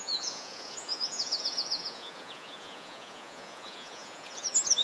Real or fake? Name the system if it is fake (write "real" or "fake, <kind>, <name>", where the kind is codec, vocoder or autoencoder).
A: fake, vocoder, Vocos